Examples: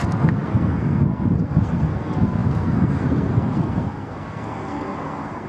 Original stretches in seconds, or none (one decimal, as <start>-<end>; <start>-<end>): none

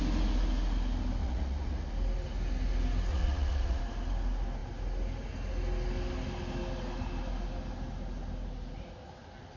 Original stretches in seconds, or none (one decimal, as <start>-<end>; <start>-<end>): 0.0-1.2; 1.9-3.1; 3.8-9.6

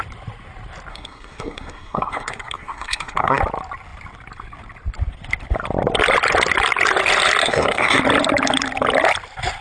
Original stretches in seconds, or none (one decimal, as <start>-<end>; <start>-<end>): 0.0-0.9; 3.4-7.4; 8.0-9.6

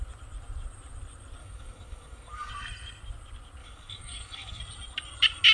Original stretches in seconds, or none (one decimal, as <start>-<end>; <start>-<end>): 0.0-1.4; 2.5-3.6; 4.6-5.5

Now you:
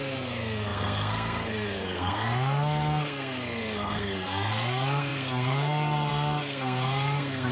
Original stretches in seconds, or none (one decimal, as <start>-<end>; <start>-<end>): none

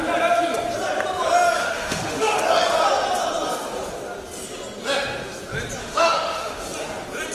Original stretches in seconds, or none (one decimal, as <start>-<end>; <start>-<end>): 0.0-1.6; 2.4-5.8; 6.6-7.3

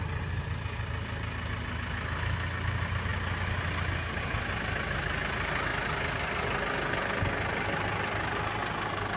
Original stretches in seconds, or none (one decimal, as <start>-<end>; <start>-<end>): 0.0-9.2